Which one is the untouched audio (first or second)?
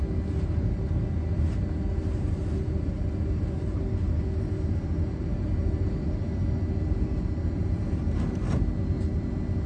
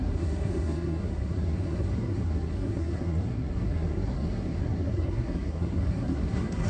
first